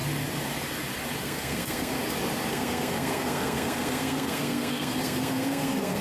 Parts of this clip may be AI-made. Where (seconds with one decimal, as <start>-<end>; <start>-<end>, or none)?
1.2-1.9; 2.5-6.0

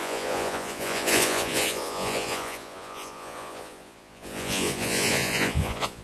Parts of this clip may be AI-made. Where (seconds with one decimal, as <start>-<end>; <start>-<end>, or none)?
0.0-6.0